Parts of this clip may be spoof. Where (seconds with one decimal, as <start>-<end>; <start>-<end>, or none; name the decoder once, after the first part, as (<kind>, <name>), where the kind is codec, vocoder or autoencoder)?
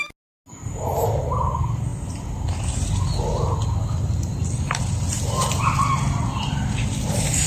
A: none